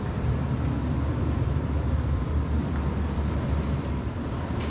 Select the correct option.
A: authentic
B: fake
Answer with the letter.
B